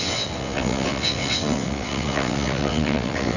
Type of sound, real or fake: fake